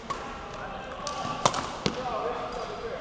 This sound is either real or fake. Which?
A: real